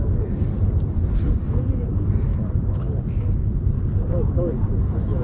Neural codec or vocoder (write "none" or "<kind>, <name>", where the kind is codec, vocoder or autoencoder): none